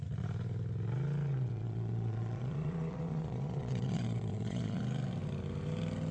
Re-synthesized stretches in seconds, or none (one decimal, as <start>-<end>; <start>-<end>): 1.3-4.8